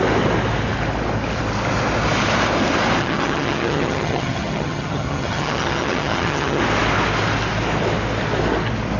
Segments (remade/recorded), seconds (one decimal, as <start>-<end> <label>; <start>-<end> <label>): 0.0-3.0 recorded; 3.0-6.6 remade; 6.6-9.0 recorded